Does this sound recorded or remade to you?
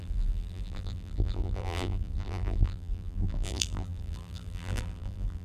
remade